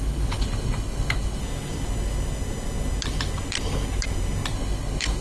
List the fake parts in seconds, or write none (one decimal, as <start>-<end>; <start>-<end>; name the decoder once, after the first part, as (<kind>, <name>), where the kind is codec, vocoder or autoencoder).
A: 0.0-1.4 (codec, HILCodec); 4.5-5.2